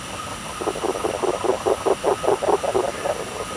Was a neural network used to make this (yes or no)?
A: no